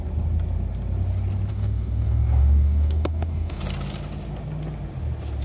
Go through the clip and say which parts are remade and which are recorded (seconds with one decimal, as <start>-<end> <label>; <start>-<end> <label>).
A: 0.0-1.5 recorded; 1.5-3.6 remade; 3.6-5.4 recorded